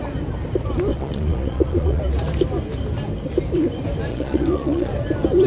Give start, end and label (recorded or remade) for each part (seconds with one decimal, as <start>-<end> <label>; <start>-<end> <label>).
0.0-0.9 recorded; 0.9-2.0 remade; 2.0-4.1 recorded; 4.1-4.9 remade; 4.9-5.5 recorded